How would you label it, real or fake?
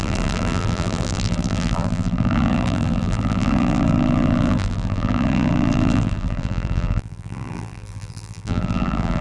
fake